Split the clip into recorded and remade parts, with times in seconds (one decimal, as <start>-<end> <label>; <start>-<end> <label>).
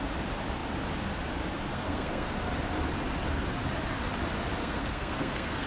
0.0-1.7 recorded; 1.7-2.3 remade; 2.3-4.6 recorded; 4.6-5.7 remade